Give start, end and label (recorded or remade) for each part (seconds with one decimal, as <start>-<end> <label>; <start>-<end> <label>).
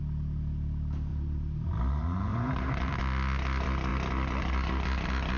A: 0.0-1.1 recorded; 1.1-1.8 remade; 1.8-2.3 recorded; 2.3-3.0 remade; 3.0-5.4 recorded